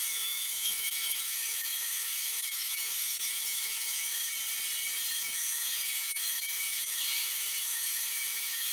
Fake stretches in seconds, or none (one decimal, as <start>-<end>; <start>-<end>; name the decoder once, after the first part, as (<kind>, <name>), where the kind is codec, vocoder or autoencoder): 0.0-4.3 (autoencoder, DAC-VAE); 5.1-8.7